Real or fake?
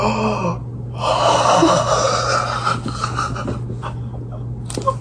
real